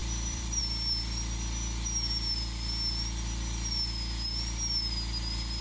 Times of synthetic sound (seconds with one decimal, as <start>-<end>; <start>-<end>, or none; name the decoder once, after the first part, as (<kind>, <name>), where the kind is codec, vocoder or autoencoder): 0.0-0.6 (vocoder, BigVGAN v2)